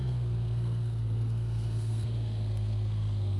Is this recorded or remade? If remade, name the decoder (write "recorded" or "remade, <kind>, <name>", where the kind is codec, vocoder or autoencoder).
remade, codec, SNAC